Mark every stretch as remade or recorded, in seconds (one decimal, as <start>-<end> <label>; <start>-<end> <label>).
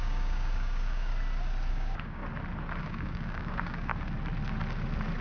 0.0-1.1 remade; 1.1-1.7 recorded; 1.7-2.2 remade; 2.2-2.8 recorded; 2.8-3.9 remade; 3.9-5.2 recorded